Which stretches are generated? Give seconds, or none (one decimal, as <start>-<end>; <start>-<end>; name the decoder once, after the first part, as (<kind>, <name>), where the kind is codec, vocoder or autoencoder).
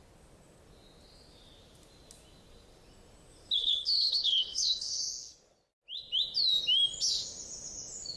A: 3.6-5.0 (codec, HILCodec)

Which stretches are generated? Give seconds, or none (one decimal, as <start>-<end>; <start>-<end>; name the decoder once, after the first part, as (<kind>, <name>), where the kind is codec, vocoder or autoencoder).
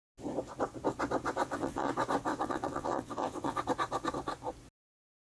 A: 1.4-1.9 (vocoder, WaveNeXt); 2.3-3.6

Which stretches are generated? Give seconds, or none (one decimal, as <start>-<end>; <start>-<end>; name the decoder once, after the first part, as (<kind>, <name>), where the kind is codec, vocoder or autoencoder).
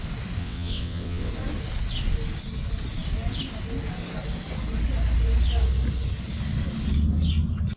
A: 0.4-1.3 (vocoder, WaveNeXt)